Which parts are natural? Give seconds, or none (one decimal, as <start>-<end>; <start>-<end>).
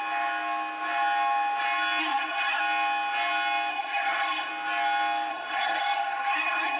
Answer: 0.0-2.0; 2.6-3.7; 4.5-5.3